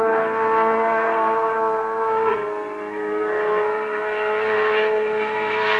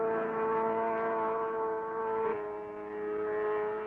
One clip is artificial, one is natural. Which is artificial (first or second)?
first